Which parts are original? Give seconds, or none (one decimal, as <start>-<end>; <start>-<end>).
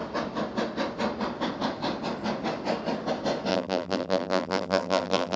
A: 0.0-3.5